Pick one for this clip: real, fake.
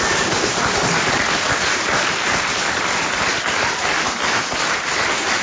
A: real